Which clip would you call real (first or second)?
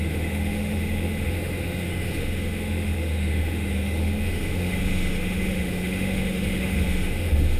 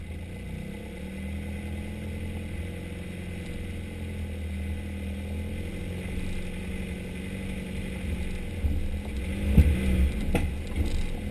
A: second